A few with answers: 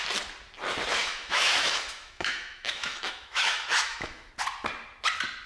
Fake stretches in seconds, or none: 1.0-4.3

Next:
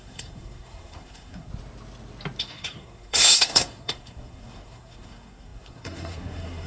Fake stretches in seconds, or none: 0.0-1.5; 2.4-6.7

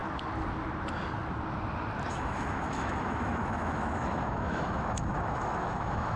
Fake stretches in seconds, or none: 2.1-6.2

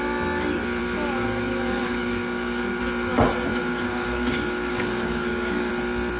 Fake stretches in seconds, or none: 0.8-2.8; 3.5-5.7

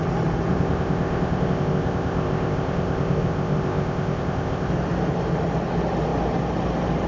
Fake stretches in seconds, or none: 0.5-4.7